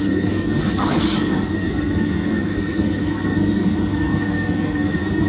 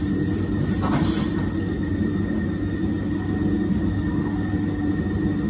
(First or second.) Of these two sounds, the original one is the second